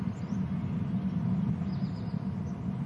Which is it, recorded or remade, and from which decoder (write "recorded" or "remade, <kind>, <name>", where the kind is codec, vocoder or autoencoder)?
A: recorded